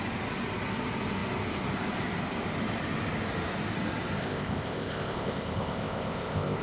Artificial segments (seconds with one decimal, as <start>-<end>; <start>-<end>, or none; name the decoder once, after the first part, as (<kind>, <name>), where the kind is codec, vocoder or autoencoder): 4.2-6.6 (codec, ZipCodec)